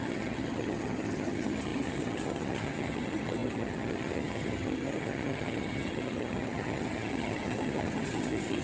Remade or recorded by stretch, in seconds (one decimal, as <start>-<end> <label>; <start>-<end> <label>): 0.0-8.6 remade